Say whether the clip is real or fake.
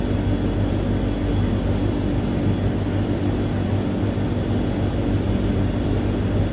real